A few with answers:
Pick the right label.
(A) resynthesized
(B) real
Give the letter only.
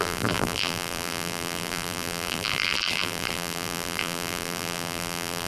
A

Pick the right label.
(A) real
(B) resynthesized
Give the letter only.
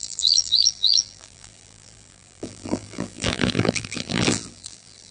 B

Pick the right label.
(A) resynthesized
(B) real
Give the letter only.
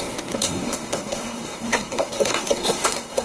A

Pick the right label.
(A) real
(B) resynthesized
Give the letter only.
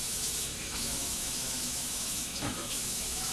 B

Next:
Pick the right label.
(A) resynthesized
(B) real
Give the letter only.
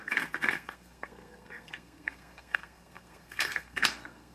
A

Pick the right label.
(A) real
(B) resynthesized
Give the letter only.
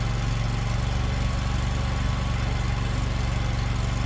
A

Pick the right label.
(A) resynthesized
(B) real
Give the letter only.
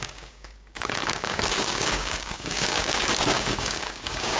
A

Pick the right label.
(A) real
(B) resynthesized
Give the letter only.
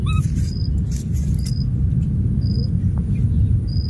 A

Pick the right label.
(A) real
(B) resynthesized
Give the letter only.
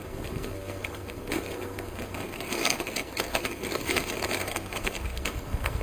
B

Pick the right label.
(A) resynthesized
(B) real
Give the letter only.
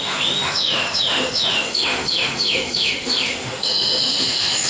A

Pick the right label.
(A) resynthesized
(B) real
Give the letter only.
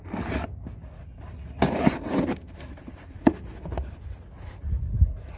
B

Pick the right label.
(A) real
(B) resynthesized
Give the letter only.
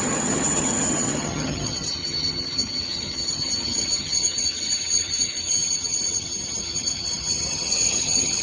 B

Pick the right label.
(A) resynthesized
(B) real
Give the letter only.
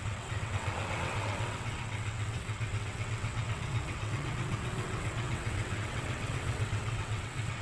A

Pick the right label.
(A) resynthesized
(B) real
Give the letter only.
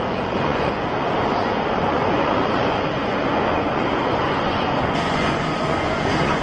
A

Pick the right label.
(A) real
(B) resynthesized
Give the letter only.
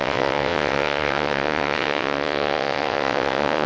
B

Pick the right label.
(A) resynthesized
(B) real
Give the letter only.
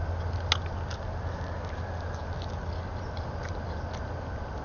B